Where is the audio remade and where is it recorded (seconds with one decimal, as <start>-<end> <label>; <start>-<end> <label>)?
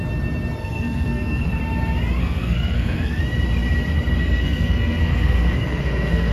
0.0-0.6 recorded; 0.6-1.6 remade; 1.6-2.2 recorded; 2.2-3.2 remade; 3.2-4.2 recorded; 4.2-6.3 remade